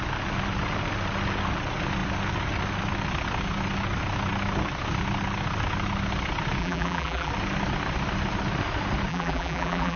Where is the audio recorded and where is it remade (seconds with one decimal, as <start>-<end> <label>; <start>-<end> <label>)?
0.0-6.6 recorded; 6.6-7.3 remade; 7.3-9.1 recorded; 9.1-10.0 remade